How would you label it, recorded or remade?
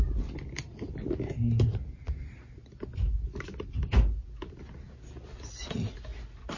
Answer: recorded